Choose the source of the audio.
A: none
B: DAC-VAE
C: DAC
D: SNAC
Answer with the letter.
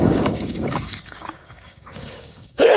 C